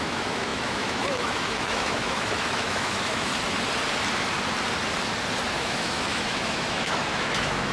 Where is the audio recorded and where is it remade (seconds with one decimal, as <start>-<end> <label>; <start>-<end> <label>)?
0.0-3.3 remade; 3.3-5.5 recorded; 5.5-7.7 remade